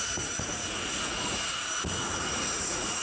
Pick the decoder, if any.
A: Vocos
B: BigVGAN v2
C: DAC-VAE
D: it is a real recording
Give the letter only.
A